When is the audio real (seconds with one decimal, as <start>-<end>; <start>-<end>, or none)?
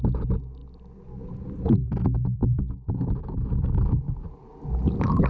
0.0-5.3